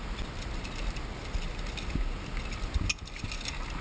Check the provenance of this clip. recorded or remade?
recorded